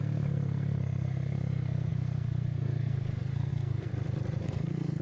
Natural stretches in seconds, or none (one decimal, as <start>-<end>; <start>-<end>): 3.9-4.4